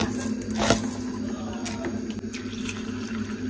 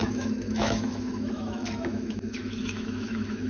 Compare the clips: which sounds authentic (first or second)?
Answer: first